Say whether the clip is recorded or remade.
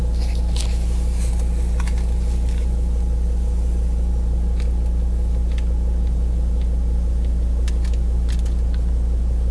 recorded